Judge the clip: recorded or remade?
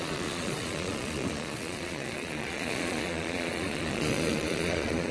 remade